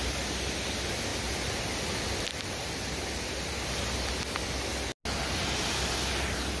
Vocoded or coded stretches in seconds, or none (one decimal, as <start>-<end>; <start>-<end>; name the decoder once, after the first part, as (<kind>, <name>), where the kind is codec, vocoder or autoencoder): none